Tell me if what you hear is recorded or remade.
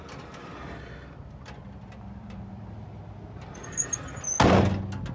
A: recorded